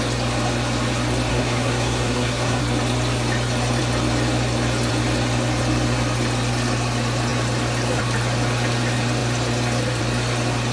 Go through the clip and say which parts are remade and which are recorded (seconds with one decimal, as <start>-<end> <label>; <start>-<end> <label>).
0.0-1.3 recorded; 1.3-2.6 remade; 2.6-10.7 recorded